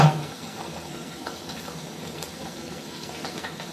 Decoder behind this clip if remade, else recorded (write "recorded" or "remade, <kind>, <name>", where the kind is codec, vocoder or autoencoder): remade, codec, SNAC